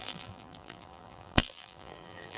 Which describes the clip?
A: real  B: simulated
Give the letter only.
B